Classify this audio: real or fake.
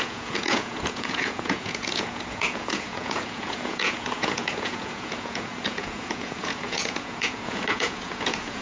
fake